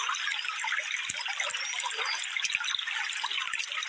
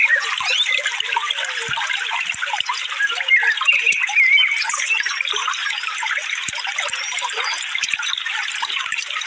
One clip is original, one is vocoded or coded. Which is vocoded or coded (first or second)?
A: second